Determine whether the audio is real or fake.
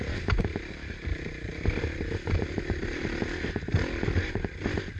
real